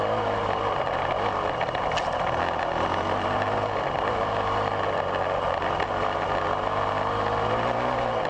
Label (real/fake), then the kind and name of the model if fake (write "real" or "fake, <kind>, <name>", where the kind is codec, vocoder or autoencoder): real